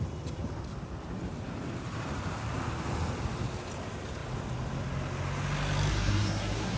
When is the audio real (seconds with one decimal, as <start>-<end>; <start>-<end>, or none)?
0.0-5.9